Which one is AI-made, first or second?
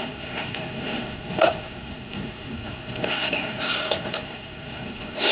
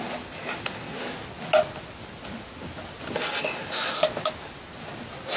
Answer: first